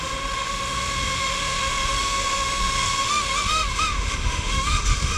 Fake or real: fake